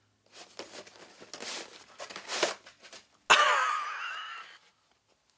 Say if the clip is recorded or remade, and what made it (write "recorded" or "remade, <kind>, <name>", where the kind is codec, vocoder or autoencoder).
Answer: recorded